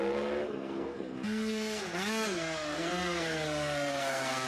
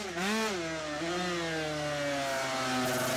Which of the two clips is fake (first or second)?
first